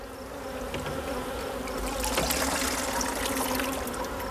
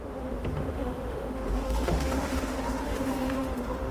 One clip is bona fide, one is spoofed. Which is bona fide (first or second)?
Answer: first